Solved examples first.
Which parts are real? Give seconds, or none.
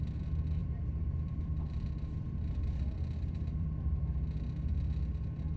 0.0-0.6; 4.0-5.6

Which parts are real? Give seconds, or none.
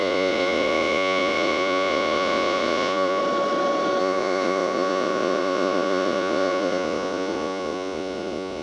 3.2-4.0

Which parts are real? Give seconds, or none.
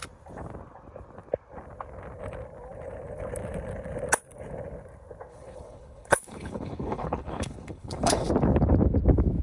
0.0-5.3; 8.3-9.4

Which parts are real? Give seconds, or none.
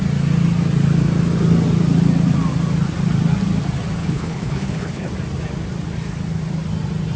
0.0-4.0; 5.1-7.2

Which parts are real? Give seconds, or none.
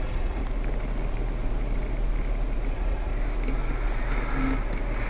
0.4-2.7; 3.1-5.1